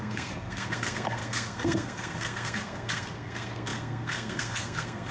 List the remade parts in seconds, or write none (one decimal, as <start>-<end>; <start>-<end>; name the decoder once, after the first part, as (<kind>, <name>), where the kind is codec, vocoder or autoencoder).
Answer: 0.0-5.1 (codec, SNAC)

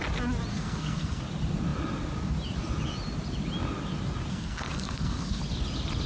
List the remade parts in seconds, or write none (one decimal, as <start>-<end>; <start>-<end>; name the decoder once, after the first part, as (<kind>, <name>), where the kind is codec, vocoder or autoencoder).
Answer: 0.5-1.2 (codec, SNAC); 4.3-5.4

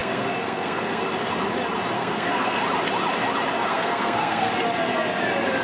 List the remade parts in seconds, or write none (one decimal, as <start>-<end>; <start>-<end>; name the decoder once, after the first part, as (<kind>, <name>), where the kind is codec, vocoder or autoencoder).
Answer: 0.0-1.0 (codec, SNAC); 2.0-2.6; 3.5-4.5

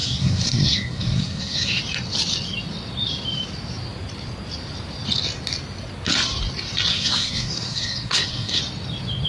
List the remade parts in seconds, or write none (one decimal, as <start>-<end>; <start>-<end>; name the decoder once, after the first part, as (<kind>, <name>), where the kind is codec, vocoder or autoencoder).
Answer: 0.0-1.8 (codec, SNAC); 6.9-8.6